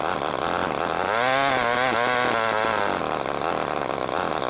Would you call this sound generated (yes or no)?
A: no